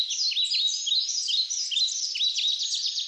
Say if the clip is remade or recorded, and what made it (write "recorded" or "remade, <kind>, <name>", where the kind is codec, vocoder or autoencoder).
recorded